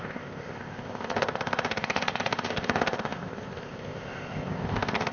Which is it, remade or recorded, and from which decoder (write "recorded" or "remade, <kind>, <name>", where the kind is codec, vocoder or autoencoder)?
remade, codec, ZipCodec